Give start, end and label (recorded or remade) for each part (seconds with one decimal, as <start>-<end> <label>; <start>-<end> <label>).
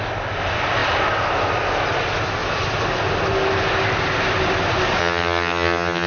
0.0-5.0 recorded; 5.0-6.1 remade